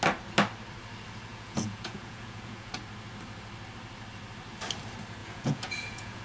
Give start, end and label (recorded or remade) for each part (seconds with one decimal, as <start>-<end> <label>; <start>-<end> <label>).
0.0-1.3 recorded; 1.3-2.7 remade; 2.7-5.2 recorded; 5.2-6.2 remade